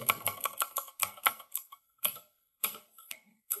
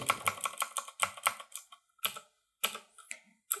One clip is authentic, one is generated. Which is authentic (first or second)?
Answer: second